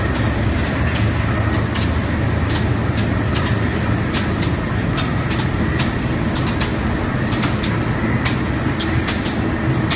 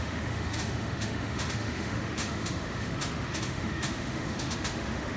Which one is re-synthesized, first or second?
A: second